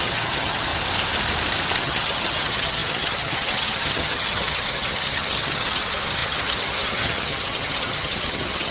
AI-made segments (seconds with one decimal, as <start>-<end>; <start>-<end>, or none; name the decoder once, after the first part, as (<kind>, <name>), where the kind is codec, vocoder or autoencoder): 0.0-0.7 (vocoder, HiFi-GAN); 1.8-8.7